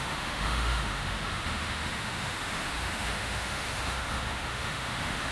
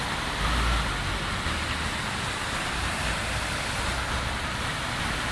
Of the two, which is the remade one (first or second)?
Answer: first